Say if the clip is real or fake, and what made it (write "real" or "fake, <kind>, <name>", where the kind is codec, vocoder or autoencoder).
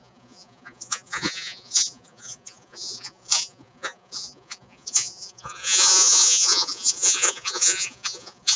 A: fake, vocoder, Vocos